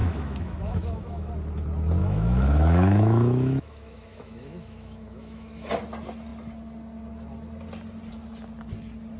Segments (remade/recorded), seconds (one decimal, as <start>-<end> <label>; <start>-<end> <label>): 0.0-1.3 remade; 1.3-2.0 recorded; 2.0-5.7 remade; 5.7-9.2 recorded